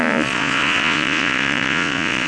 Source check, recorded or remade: remade